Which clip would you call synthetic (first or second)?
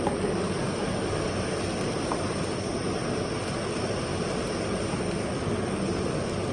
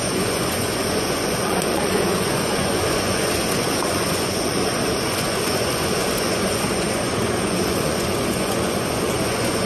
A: second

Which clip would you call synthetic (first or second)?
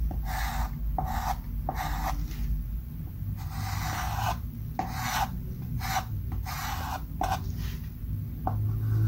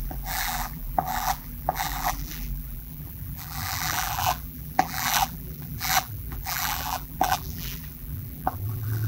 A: second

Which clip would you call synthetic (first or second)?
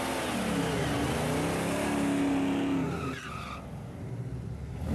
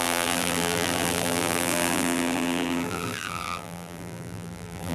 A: second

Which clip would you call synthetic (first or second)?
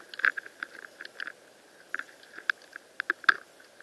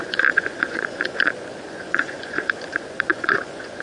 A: second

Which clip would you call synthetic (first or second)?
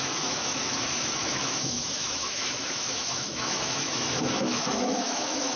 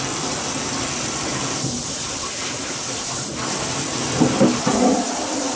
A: first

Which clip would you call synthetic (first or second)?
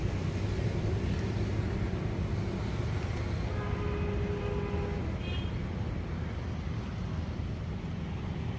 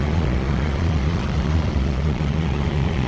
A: second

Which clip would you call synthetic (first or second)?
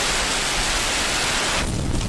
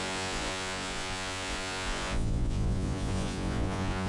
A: second